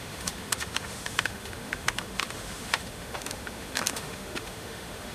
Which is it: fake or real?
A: fake